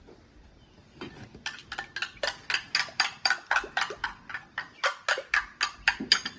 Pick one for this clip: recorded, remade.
remade